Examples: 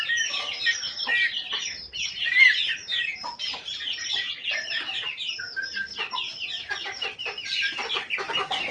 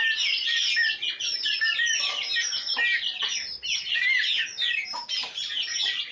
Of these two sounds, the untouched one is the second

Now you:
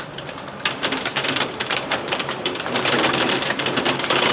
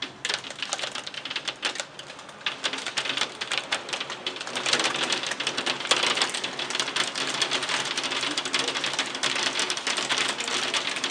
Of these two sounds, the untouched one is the second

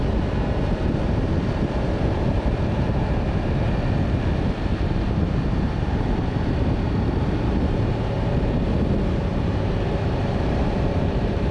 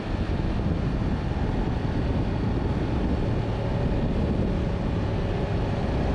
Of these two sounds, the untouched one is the second